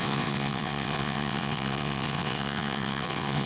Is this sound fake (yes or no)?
yes